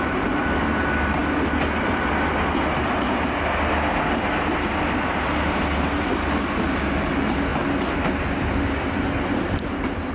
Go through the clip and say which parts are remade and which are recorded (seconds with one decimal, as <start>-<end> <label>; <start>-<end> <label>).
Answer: 0.0-10.1 recorded